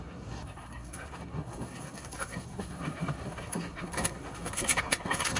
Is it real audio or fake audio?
fake